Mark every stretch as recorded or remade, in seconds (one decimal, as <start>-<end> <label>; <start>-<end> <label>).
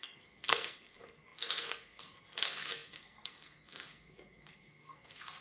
0.0-5.4 remade